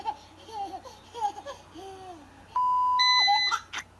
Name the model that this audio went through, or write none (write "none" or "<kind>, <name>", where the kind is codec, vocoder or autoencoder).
none